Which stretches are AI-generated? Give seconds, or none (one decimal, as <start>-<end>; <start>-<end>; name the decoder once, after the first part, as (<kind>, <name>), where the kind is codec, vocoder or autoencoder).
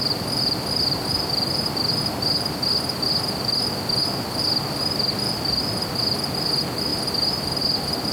none